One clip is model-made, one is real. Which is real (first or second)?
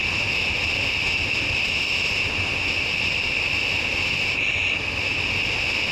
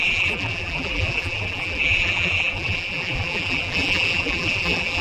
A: first